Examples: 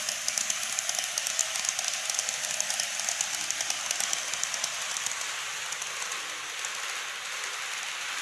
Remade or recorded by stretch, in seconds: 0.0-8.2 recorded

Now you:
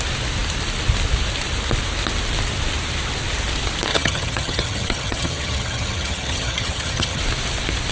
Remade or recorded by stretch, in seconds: 0.0-3.9 recorded; 3.9-7.2 remade; 7.2-7.9 recorded

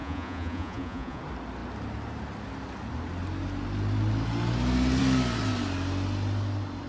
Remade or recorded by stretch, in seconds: 0.0-1.2 remade; 1.2-6.9 recorded

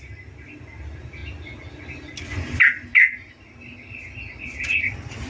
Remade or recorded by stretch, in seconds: 0.0-5.3 recorded

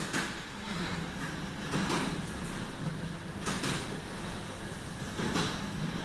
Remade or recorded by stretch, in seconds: 0.0-0.5 recorded; 0.5-1.0 remade; 1.0-6.0 recorded